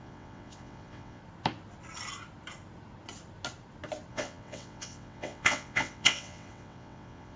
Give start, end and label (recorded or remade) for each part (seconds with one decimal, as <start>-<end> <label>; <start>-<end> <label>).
0.0-1.2 remade; 1.2-4.1 recorded; 4.1-7.4 remade